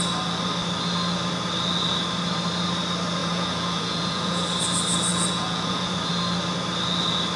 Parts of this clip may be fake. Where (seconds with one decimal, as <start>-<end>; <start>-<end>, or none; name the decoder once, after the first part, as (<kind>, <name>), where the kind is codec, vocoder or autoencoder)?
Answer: 3.2-4.4 (vocoder, Vocos); 5.1-6.1